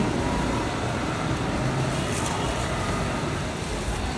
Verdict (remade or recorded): recorded